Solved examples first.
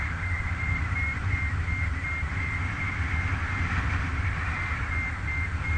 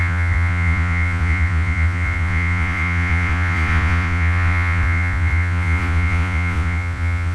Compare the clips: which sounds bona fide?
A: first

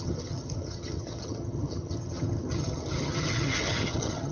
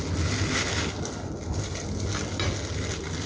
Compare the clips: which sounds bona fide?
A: second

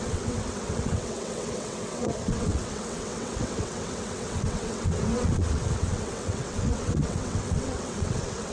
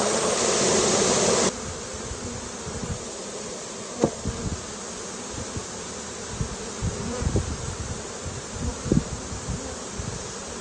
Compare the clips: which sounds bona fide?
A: second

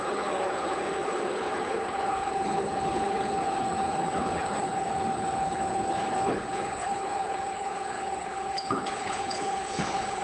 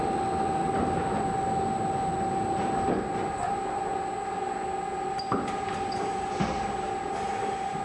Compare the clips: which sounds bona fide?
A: second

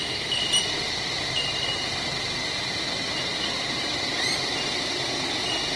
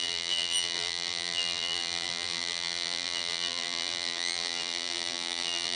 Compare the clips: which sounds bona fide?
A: first